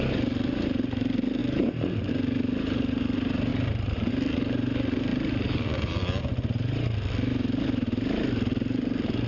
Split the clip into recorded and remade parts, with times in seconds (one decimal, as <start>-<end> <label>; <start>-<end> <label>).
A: 0.0-1.4 recorded; 1.4-2.1 remade; 2.1-3.5 recorded; 3.5-4.1 remade; 4.1-5.1 recorded; 5.1-6.2 remade; 6.2-9.3 recorded